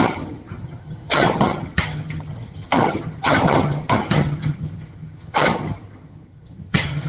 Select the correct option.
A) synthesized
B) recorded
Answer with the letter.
A